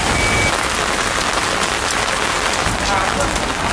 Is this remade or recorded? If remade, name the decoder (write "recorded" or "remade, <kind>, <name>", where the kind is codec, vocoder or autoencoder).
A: recorded